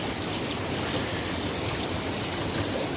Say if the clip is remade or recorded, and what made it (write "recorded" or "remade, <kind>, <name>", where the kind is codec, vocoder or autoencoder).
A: recorded